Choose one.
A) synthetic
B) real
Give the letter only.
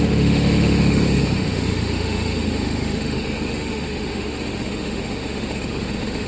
A